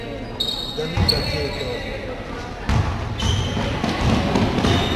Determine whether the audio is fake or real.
real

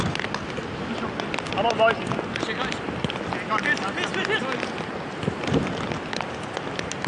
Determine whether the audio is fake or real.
real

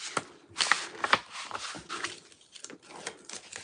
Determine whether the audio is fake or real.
real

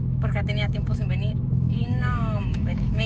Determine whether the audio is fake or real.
fake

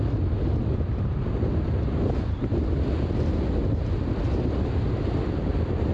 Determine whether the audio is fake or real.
real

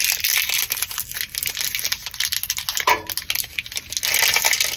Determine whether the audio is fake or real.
real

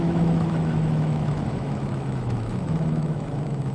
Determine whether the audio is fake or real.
fake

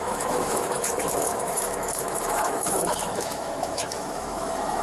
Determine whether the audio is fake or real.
fake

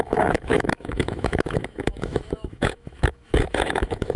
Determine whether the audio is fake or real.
fake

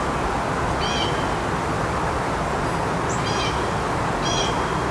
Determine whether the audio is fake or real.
real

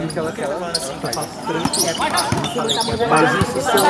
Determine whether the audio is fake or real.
real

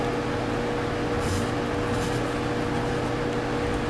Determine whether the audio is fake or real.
real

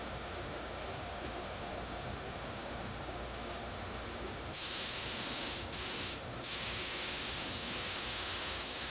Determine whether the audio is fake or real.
fake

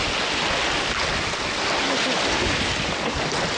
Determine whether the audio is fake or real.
real